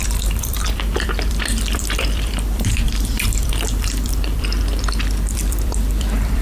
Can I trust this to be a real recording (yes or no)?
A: no